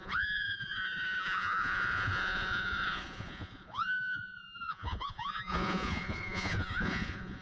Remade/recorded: remade